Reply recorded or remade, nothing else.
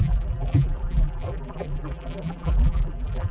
remade